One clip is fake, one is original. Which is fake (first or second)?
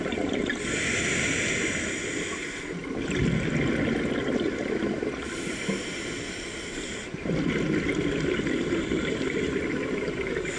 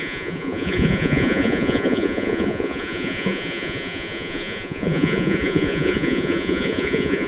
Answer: second